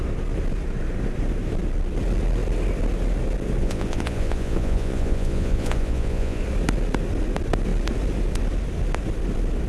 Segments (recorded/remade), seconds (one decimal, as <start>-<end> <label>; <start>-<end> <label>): 0.0-3.6 recorded; 3.6-6.4 remade; 6.4-9.7 recorded